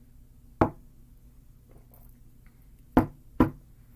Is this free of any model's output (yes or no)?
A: yes